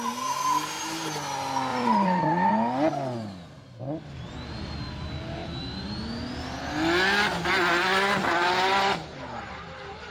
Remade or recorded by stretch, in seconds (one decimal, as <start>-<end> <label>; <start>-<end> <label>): 0.0-1.7 recorded; 1.7-2.5 remade; 2.5-10.1 recorded